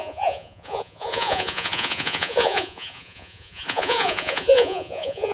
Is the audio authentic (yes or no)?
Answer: no